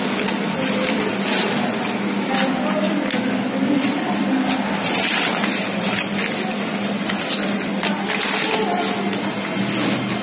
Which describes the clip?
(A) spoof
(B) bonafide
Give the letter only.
B